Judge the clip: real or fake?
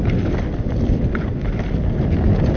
real